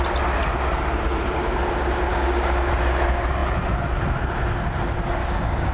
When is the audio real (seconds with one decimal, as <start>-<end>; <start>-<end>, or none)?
0.0-2.1; 2.7-5.2